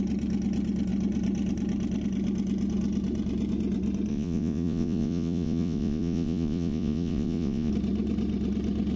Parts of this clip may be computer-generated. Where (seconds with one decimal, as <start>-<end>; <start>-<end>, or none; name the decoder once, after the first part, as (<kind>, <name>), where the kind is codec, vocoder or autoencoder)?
4.1-7.7 (vocoder, Vocos)